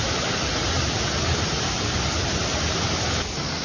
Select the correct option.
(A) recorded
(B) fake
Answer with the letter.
A